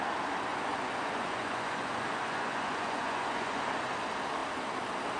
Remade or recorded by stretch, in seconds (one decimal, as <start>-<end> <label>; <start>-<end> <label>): 0.0-0.5 recorded; 0.5-3.6 remade; 3.6-5.2 recorded